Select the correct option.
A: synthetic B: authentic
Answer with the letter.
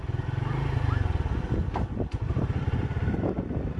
B